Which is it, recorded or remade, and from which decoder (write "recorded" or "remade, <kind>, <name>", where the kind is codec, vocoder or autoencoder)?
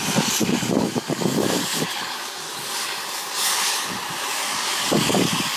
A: remade, codec, DAC